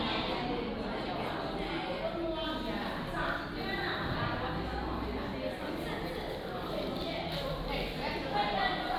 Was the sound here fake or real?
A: real